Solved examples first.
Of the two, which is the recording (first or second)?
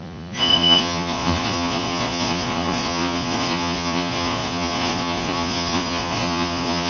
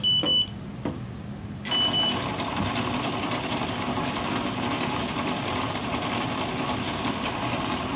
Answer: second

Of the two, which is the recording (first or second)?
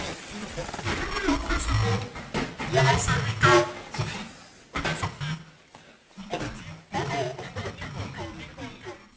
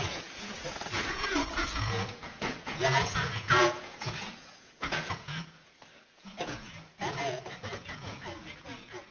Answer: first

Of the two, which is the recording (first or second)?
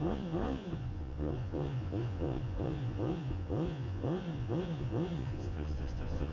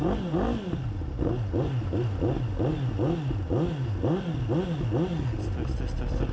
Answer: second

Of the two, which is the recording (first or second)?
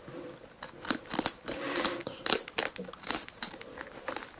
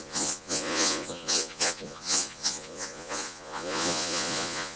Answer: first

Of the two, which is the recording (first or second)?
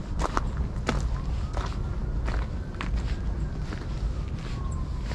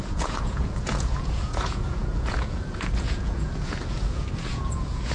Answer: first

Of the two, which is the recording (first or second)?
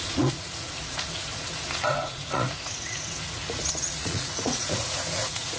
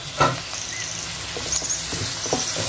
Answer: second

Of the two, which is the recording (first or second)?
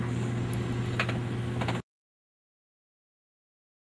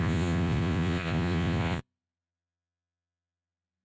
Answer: first